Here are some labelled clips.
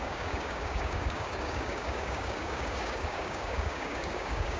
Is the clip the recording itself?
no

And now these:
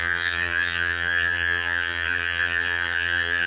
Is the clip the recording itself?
no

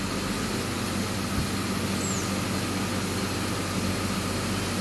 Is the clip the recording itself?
yes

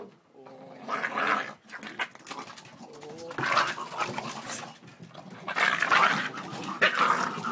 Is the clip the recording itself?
yes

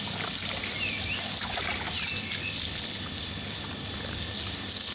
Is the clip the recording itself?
yes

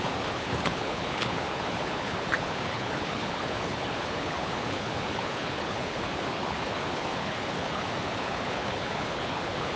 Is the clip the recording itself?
no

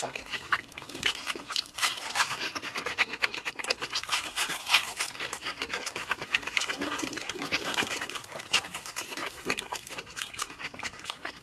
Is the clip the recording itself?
no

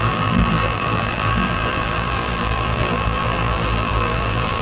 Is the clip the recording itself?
no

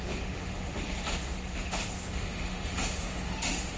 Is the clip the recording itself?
no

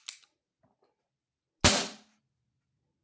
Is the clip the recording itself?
yes